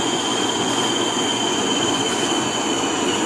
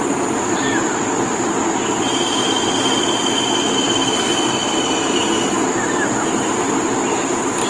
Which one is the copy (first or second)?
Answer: first